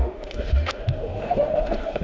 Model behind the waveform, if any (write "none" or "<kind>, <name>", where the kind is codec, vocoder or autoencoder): autoencoder, DAC-VAE